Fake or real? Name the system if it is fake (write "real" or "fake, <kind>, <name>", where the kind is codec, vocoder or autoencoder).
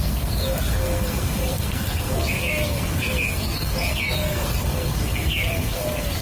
fake, codec, SNAC